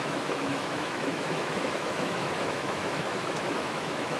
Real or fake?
fake